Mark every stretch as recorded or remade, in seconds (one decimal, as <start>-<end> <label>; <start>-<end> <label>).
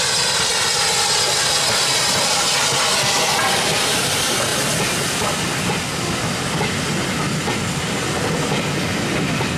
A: 0.0-9.6 recorded